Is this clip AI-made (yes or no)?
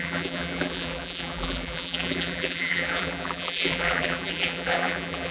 yes